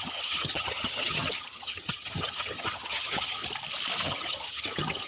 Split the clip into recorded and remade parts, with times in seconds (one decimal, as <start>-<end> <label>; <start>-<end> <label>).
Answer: 0.0-3.4 remade; 3.4-4.0 recorded; 4.0-5.1 remade